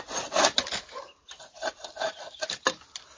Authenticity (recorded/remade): recorded